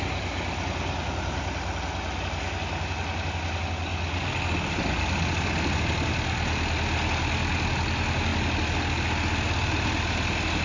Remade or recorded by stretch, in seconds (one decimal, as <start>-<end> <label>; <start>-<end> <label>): 0.0-10.6 recorded